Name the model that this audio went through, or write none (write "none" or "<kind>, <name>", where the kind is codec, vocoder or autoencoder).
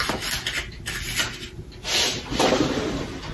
none